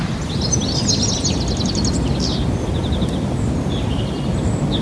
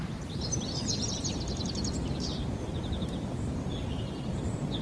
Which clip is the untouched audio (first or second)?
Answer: first